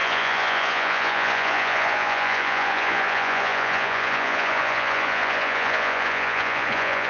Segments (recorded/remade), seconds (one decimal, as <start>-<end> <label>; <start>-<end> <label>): 0.0-7.1 remade